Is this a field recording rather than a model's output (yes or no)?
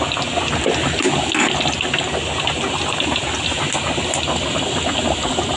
yes